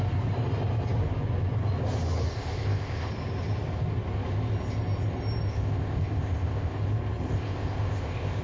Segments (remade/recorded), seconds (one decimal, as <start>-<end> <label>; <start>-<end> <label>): 0.0-2.3 recorded; 2.3-3.1 remade; 3.1-5.5 recorded; 5.5-6.8 remade; 6.8-7.3 recorded; 7.3-8.4 remade